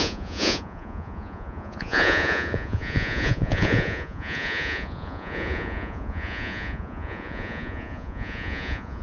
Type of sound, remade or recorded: remade